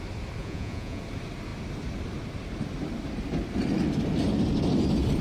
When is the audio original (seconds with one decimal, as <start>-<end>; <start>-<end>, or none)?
0.0-0.4; 1.0-5.2